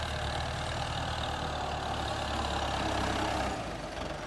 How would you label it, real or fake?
real